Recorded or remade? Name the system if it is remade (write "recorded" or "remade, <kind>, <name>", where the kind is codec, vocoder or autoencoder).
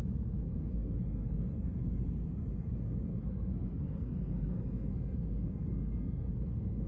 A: remade, codec, SNAC